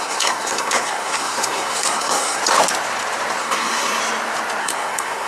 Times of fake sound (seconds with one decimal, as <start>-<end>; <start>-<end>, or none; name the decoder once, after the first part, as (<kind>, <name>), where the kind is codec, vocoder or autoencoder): 0.0-2.4 (codec, SNAC); 3.4-4.0; 4.6-5.3